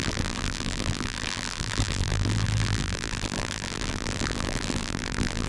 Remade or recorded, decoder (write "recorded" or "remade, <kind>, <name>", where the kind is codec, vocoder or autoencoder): remade, vocoder, BigVGAN v2